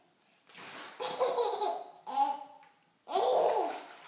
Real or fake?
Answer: real